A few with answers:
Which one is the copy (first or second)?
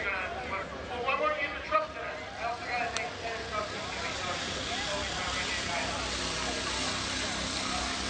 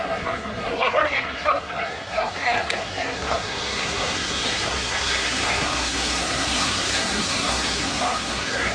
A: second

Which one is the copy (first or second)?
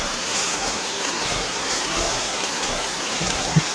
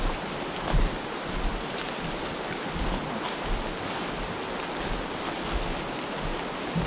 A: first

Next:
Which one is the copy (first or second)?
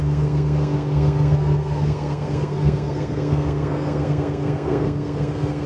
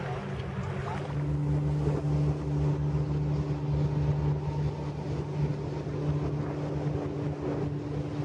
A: first